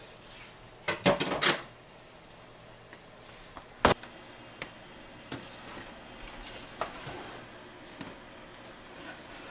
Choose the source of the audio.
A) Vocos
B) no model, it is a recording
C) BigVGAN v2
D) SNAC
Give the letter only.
B